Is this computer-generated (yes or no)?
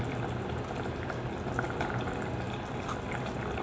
no